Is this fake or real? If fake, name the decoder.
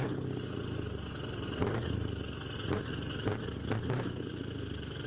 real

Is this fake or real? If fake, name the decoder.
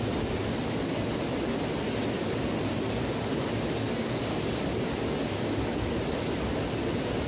real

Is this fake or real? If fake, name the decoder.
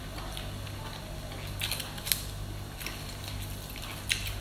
real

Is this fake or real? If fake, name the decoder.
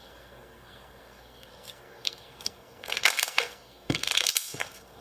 fake, codec, SNAC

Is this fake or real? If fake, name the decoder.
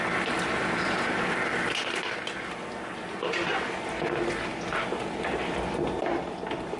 fake, vocoder, BigVGAN v2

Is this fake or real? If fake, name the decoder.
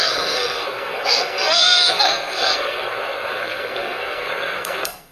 fake, codec, SNAC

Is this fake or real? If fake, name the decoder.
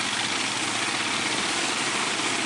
real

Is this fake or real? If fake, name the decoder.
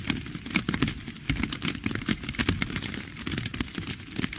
real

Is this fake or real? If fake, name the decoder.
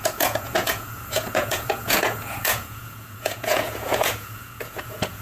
fake, vocoder, Vocos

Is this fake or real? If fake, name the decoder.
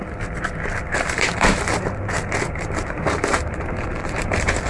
fake, vocoder, BigVGAN v2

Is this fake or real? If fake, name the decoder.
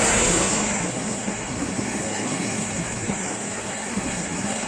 fake, codec, SNAC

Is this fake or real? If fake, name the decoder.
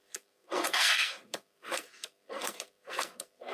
fake, codec, SNAC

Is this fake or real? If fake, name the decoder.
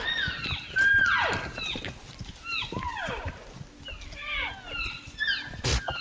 real